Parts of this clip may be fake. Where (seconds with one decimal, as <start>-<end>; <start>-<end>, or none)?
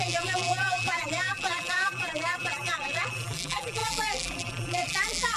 0.0-5.4